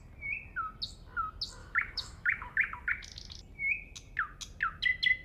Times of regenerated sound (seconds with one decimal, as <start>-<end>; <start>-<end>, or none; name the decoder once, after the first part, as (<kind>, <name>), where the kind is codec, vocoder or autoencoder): 1.6-2.9 (autoencoder, DAC-VAE)